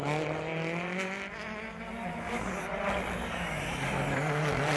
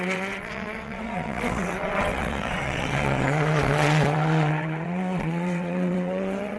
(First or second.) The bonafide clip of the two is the first